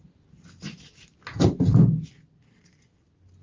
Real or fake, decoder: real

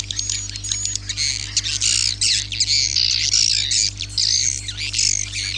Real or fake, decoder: real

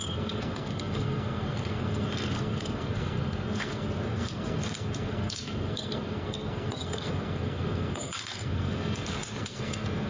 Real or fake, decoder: fake, codec, SNAC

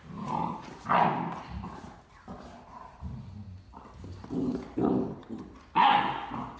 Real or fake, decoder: real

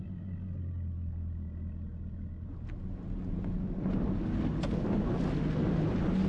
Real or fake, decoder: real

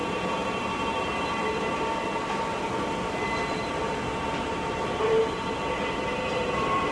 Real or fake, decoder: real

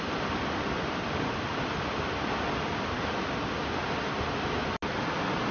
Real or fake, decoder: real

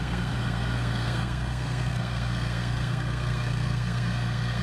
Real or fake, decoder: fake, codec, SNAC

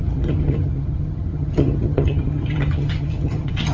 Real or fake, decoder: fake, vocoder, HiFi-GAN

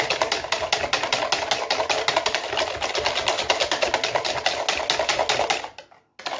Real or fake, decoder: real